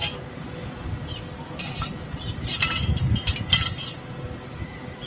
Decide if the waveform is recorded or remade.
recorded